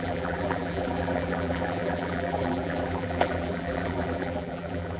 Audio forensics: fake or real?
fake